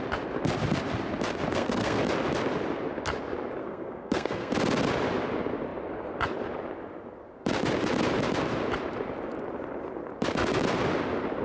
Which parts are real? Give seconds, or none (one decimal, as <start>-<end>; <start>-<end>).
0.0-1.5; 2.0-3.6; 4.5-11.4